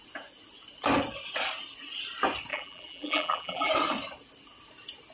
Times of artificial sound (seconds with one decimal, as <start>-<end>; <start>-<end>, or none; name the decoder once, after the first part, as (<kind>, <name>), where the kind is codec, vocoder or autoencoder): 2.5-3.7 (vocoder, BigVGAN v2)